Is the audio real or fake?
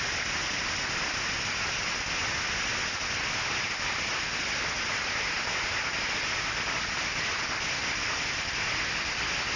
real